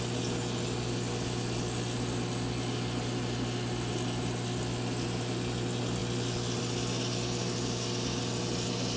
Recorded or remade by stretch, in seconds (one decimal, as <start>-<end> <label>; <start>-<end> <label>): 0.0-9.0 recorded